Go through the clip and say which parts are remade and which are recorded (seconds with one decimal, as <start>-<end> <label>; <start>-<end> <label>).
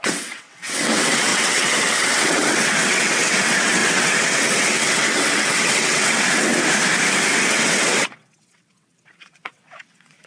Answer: 0.0-6.6 remade; 6.6-7.5 recorded; 7.5-10.3 remade